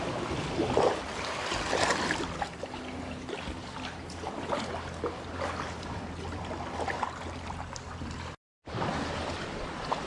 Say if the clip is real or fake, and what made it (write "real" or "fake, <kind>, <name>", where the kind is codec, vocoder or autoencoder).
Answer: real